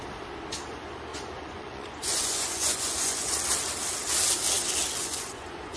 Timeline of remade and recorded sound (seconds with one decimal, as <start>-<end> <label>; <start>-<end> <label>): 0.0-1.1 recorded; 1.1-3.3 remade; 3.3-5.0 recorded; 5.0-5.8 remade